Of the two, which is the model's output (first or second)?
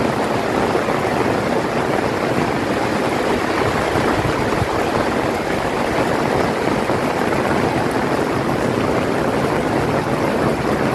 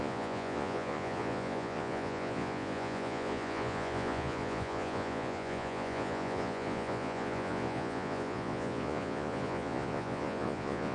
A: second